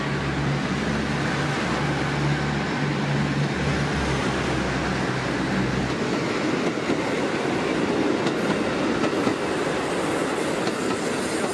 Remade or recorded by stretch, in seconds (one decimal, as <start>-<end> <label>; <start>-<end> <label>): 0.0-11.5 recorded